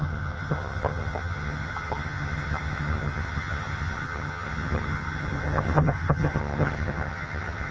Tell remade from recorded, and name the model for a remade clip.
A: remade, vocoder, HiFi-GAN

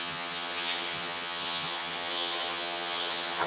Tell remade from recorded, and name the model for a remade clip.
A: remade, vocoder, HiFi-GAN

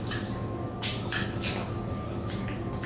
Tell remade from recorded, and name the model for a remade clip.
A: recorded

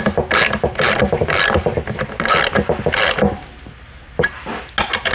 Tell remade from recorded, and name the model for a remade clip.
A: recorded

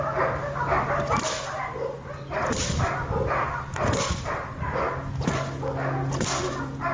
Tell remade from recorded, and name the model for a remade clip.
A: recorded